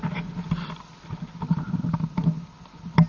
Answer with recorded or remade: recorded